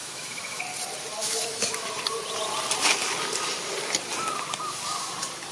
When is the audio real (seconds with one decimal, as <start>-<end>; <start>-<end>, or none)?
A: 0.6-1.2; 1.9-5.5